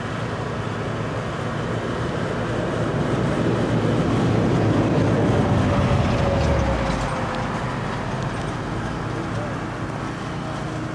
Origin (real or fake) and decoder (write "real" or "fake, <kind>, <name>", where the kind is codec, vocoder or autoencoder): real